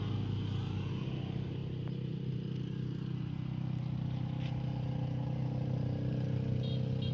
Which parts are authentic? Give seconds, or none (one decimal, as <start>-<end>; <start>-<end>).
0.0-7.1